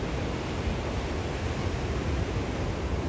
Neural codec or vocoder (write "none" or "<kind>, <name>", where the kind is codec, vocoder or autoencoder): none